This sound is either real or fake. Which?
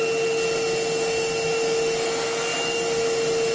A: real